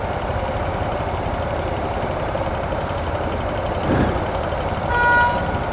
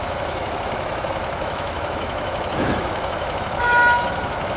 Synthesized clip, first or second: second